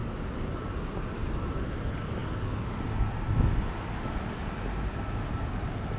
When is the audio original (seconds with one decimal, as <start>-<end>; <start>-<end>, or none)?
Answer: 0.0-6.0